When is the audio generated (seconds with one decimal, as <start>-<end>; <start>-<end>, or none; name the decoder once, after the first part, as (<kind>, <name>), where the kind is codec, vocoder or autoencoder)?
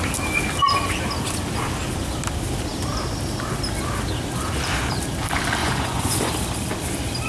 5.6-6.3 (vocoder, Vocos)